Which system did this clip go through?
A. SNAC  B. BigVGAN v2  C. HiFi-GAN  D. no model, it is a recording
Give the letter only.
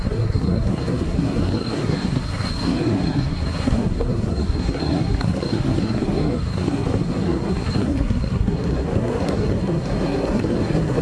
A